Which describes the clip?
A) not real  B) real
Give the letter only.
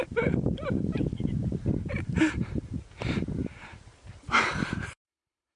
A